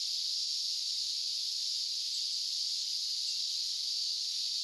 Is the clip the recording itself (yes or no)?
no